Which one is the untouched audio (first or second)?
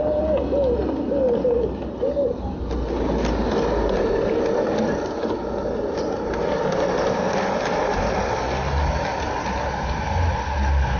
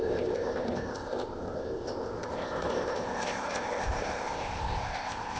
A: first